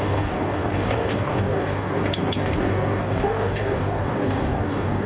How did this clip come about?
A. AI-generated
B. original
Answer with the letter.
A